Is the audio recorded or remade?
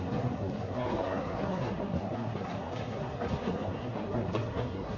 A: remade